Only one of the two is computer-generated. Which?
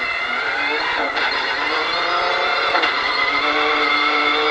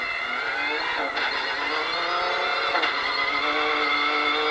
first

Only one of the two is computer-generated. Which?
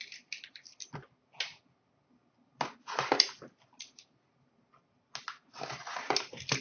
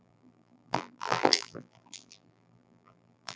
second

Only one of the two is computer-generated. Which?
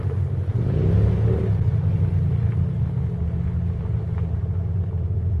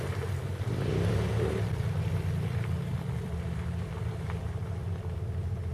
second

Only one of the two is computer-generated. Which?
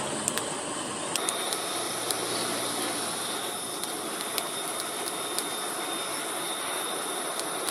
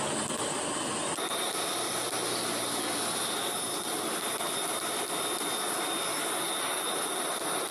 first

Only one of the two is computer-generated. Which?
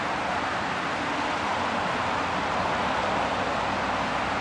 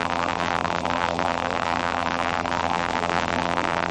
second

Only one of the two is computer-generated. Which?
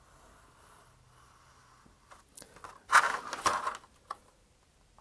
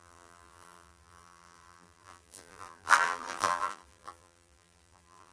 second